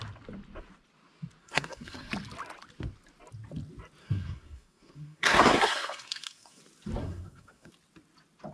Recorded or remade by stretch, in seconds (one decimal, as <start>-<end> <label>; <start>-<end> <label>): 0.0-1.4 recorded; 1.4-2.1 remade; 2.1-4.0 recorded; 4.0-6.6 remade; 6.6-7.0 recorded; 7.0-7.7 remade; 7.7-8.5 recorded